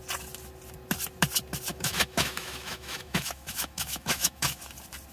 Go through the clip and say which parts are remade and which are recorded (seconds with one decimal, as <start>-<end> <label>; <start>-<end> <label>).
0.0-1.7 recorded; 1.7-4.6 remade; 4.6-5.1 recorded